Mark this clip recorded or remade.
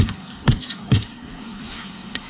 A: remade